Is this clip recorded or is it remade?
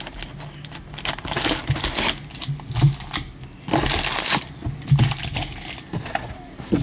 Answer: recorded